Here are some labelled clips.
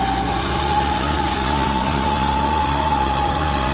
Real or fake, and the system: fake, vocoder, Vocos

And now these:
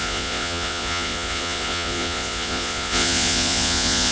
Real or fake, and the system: fake, vocoder, Vocos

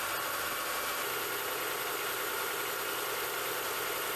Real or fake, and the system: real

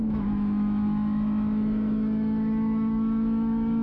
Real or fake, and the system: fake, autoencoder, DAC-VAE